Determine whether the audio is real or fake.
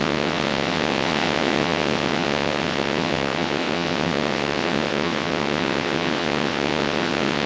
fake